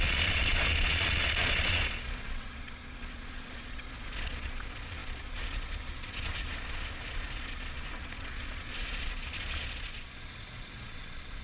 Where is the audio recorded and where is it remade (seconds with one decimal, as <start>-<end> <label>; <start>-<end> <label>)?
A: 0.0-11.4 remade